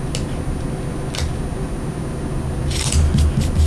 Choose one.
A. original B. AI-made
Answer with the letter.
A